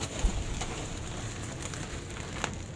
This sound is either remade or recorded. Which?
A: recorded